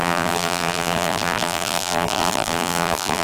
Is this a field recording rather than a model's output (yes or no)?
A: no